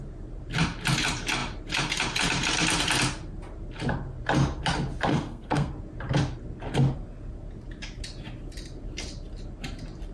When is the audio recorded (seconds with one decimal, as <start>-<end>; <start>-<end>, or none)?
0.0-5.1; 5.7-10.1